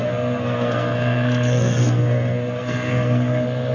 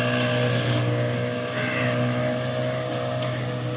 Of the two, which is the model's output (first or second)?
first